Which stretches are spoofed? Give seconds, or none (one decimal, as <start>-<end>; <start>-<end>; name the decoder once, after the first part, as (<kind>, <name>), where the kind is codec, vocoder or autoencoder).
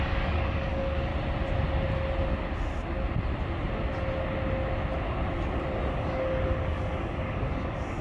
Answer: 0.0-1.1 (codec, DAC); 5.9-8.0